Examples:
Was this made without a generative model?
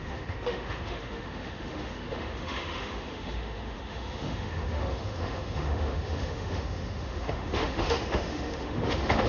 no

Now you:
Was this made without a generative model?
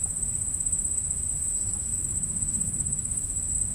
no